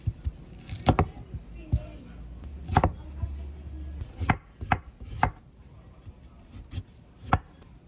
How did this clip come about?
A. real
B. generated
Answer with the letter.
A